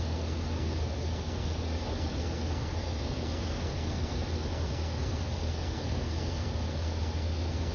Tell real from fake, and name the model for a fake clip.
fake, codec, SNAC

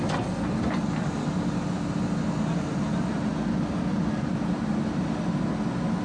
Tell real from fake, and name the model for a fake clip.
real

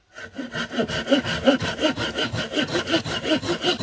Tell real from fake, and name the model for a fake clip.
real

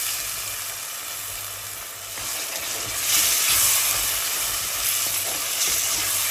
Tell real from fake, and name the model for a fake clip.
real